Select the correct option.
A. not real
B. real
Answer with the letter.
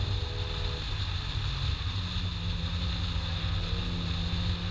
B